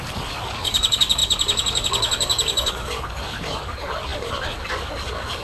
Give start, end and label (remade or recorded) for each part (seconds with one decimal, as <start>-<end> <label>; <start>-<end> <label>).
0.0-5.4 remade